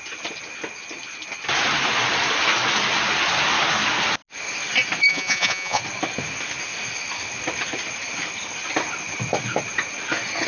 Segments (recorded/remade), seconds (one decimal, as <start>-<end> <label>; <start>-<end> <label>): 0.0-5.1 recorded; 5.1-5.8 remade; 5.8-10.5 recorded